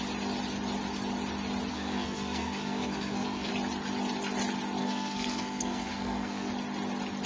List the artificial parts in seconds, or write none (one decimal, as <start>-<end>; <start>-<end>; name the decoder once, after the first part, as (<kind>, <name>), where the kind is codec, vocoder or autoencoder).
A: 1.7-3.5 (codec, SNAC); 4.8-6.5